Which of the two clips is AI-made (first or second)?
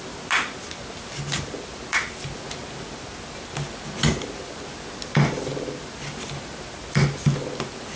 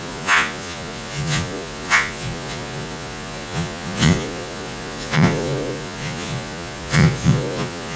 second